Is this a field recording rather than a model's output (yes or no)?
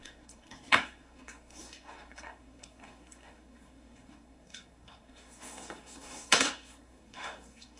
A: no